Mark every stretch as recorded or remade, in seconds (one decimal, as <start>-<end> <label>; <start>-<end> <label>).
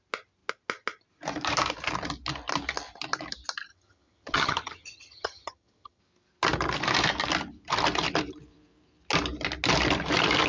0.0-3.7 recorded; 3.7-6.0 remade; 6.0-10.5 recorded